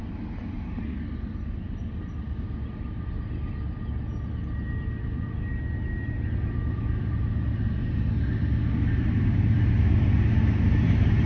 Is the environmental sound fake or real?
real